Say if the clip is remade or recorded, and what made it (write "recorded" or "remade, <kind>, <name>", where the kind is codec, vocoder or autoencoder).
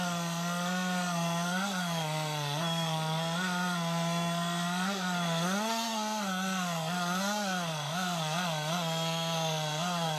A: remade, codec, SNAC